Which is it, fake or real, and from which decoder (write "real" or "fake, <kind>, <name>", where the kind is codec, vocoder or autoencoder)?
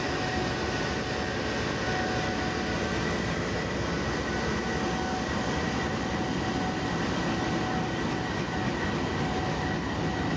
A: real